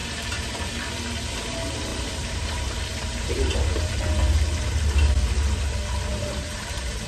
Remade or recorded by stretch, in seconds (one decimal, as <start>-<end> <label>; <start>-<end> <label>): 0.0-0.5 remade; 0.5-1.9 recorded; 1.9-4.0 remade; 4.0-6.1 recorded; 6.1-7.1 remade